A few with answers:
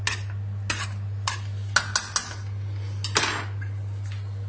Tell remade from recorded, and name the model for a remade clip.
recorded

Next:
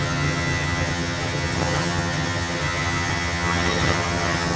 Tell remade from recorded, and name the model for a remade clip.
remade, vocoder, HiFi-GAN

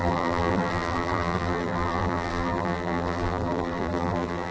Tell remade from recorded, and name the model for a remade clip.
remade, vocoder, BigVGAN v2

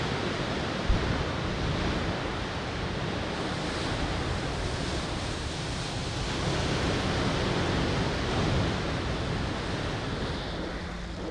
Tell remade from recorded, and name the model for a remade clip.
recorded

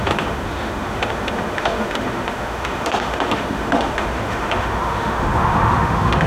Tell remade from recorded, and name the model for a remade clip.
remade, autoencoder, DAC-VAE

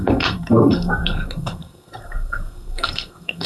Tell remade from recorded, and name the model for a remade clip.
remade, codec, SNAC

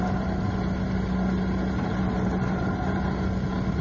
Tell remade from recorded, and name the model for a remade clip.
recorded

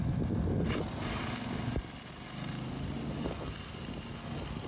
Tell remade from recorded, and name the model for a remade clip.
recorded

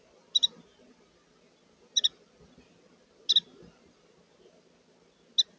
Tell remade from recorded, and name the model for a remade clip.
recorded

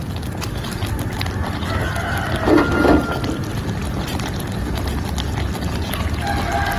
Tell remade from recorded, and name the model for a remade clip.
recorded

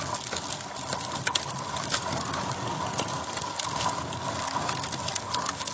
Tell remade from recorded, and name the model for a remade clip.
recorded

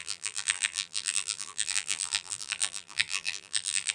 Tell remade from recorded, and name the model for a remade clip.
remade, vocoder, BigVGAN v2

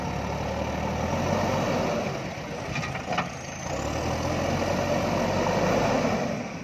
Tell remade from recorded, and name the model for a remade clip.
recorded